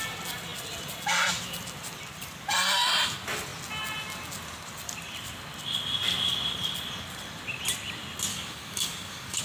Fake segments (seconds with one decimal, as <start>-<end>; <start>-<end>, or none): 8.3-9.4